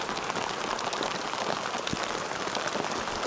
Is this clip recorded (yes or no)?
yes